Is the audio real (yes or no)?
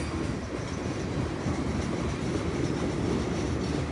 yes